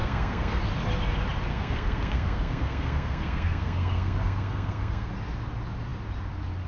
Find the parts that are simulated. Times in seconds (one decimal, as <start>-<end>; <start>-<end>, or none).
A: 0.0-0.6; 1.5-5.1